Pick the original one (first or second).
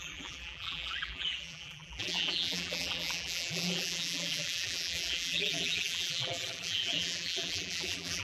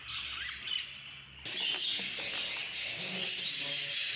second